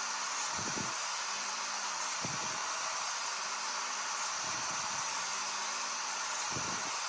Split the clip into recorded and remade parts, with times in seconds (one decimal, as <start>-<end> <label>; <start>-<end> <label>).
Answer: 0.0-0.7 recorded; 0.7-2.0 remade; 2.0-7.1 recorded